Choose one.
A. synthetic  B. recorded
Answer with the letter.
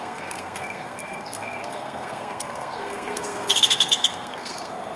A